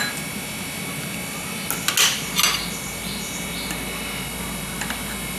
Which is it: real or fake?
real